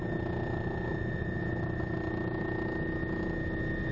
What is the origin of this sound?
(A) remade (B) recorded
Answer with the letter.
B